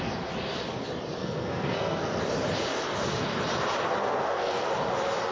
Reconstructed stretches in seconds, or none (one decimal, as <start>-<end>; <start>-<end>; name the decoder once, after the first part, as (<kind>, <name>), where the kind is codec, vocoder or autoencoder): 1.2-2.2 (codec, SNAC); 4.0-4.7